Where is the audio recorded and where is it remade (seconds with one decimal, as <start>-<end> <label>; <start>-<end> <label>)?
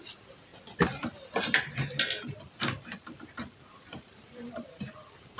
0.0-0.5 remade; 0.5-3.7 recorded; 3.7-5.4 remade